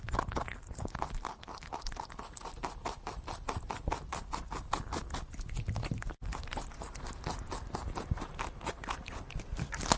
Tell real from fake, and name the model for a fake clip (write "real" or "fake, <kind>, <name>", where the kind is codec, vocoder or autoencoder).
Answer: real